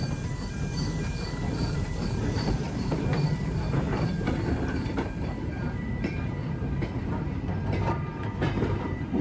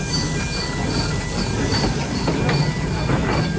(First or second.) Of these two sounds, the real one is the second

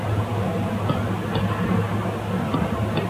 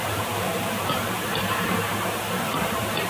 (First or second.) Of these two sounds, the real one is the first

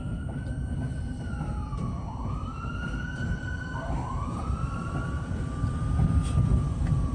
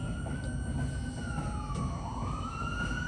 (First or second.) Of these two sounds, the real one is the second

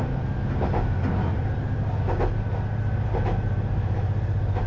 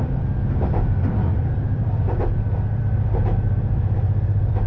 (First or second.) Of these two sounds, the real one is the first